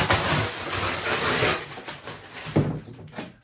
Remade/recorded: recorded